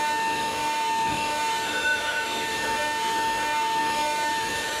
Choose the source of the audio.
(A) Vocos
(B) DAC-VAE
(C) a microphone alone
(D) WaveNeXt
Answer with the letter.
B